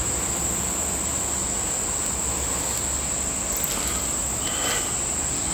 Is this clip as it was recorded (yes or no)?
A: yes